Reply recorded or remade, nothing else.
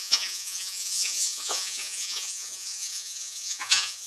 remade